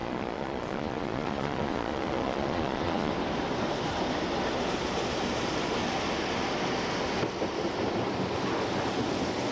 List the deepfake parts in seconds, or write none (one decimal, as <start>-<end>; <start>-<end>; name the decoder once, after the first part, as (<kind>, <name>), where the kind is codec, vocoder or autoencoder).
0.0-3.1 (vocoder, Vocos)